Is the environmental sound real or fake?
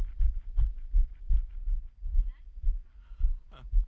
real